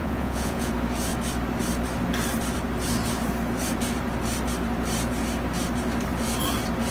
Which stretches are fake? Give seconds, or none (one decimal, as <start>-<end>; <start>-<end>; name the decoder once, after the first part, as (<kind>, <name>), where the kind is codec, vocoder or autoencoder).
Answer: 0.0-0.7 (vocoder, Vocos)